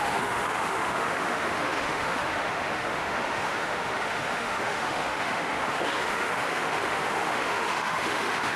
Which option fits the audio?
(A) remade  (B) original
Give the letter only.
A